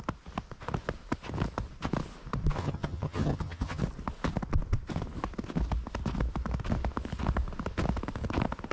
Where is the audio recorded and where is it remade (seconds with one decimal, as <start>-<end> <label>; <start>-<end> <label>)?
0.0-2.6 recorded; 2.6-3.8 remade; 3.8-8.7 recorded